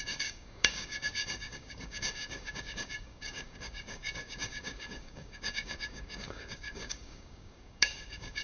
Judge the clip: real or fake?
fake